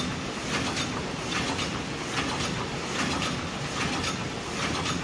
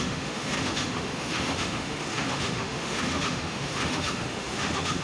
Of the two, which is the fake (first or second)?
second